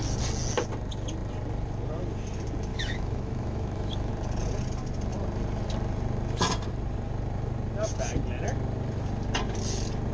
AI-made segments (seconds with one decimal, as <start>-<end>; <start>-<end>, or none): 2.7-4.1